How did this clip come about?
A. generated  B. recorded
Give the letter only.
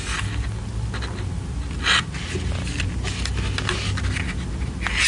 B